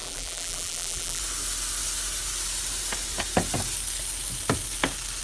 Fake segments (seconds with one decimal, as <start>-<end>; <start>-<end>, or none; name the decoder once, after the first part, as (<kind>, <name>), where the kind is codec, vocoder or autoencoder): 0.0-1.2 (vocoder, BigVGAN v2)